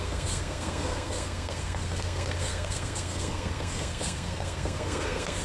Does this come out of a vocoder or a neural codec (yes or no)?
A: yes